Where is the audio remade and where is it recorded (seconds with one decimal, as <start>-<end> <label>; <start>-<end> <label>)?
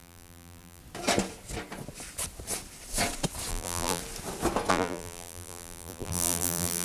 0.0-0.8 remade; 0.8-3.5 recorded; 3.5-4.0 remade; 4.0-4.7 recorded; 4.7-6.8 remade